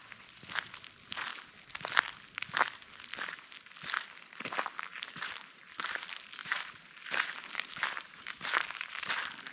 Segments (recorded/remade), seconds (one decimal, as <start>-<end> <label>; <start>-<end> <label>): 0.0-4.9 recorded; 4.9-5.6 remade; 5.6-6.4 recorded; 6.4-9.1 remade; 9.1-9.5 recorded